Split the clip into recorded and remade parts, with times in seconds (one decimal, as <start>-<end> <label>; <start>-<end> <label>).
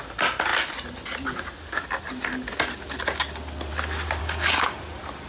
0.0-4.2 recorded; 4.2-4.8 remade; 4.8-5.3 recorded